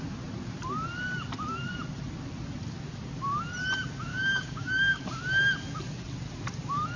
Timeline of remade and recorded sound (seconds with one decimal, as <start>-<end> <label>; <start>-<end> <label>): 0.0-4.1 recorded; 4.1-5.0 remade; 5.0-7.0 recorded